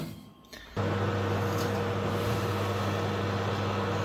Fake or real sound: real